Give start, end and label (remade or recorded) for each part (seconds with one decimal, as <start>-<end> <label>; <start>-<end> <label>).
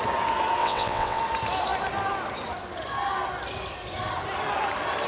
0.0-0.6 recorded; 0.6-1.2 remade; 1.2-5.1 recorded